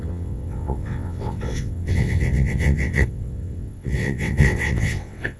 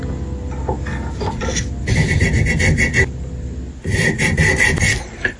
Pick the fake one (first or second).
first